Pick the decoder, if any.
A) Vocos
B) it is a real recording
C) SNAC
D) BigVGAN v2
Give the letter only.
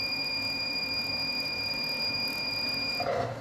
D